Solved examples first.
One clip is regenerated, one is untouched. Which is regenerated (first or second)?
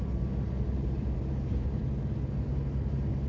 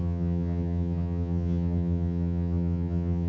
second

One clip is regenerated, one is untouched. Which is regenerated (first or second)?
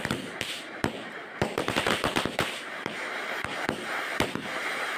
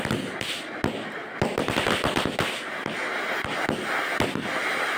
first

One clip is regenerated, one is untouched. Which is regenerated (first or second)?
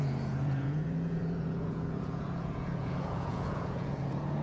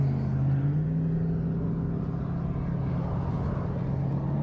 first